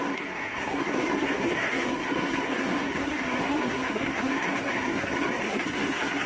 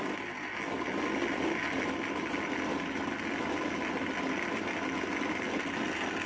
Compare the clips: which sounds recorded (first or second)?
second